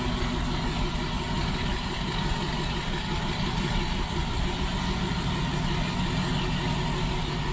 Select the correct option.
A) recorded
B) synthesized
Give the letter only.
A